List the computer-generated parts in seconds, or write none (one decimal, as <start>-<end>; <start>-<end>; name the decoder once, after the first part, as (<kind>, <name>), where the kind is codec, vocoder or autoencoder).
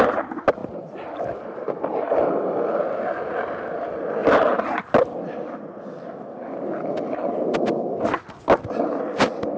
0.6-2.3 (vocoder, BigVGAN v2); 4.2-4.8